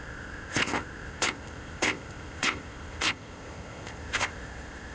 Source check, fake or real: fake